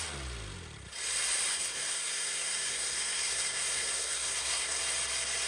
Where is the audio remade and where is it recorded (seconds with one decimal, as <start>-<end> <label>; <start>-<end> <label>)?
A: 0.0-1.5 recorded; 1.5-4.8 remade; 4.8-5.5 recorded